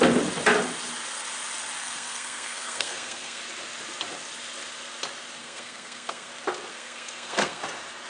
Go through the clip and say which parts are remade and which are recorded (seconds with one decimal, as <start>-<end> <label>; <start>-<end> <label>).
0.0-1.8 recorded; 1.8-3.4 remade; 3.4-5.4 recorded; 5.4-6.3 remade; 6.3-6.7 recorded; 6.7-7.6 remade; 7.6-8.1 recorded

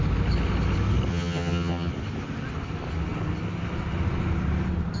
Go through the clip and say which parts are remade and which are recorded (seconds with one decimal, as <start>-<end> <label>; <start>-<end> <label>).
0.0-1.1 recorded; 1.1-1.9 remade; 1.9-5.0 recorded

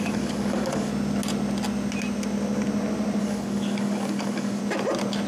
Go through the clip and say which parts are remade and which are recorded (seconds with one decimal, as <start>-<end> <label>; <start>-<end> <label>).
0.0-0.9 remade; 0.9-3.2 recorded; 3.2-4.6 remade; 4.6-5.3 recorded

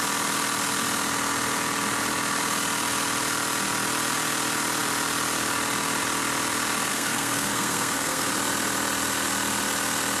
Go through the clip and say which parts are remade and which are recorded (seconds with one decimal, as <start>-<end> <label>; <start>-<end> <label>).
0.0-6.9 recorded; 6.9-8.3 remade; 8.3-10.2 recorded

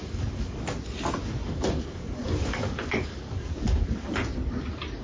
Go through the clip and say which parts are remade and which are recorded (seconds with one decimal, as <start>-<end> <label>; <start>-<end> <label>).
0.0-0.6 remade; 0.6-1.2 recorded; 1.2-4.2 remade; 4.2-5.0 recorded

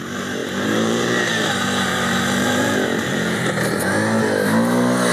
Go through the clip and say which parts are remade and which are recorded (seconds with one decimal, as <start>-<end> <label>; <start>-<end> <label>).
0.0-0.4 recorded; 0.4-3.5 remade; 3.5-5.1 recorded

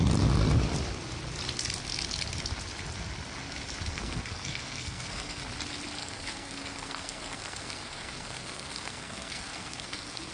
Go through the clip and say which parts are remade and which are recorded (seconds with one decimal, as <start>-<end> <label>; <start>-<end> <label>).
0.0-3.9 recorded; 3.9-5.4 remade; 5.4-6.0 recorded; 6.0-10.3 remade